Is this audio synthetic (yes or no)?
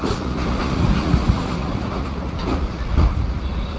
yes